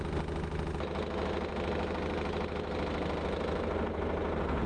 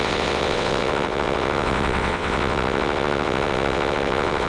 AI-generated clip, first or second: second